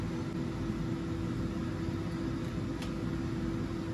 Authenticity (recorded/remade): recorded